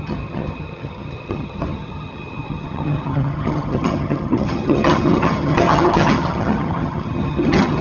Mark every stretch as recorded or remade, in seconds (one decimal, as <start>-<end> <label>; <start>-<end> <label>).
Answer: 0.0-7.8 remade